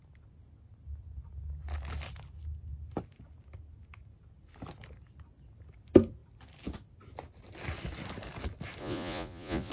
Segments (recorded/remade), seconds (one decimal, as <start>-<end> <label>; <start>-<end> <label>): 0.0-8.8 recorded; 8.8-9.7 remade